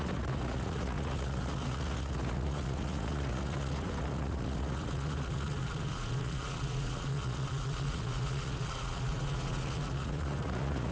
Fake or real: fake